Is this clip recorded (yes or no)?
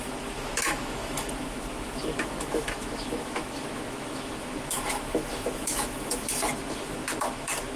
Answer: no